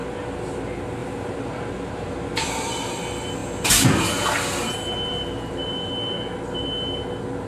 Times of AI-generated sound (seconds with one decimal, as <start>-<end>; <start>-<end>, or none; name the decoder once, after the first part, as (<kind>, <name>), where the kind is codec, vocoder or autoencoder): 1.0-3.0 (vocoder, BigVGAN v2)